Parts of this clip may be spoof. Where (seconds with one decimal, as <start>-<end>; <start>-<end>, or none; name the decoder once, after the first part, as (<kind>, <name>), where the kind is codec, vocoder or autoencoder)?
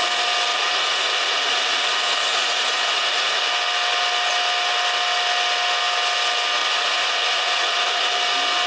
0.5-3.4 (vocoder, Vocos); 6.6-8.1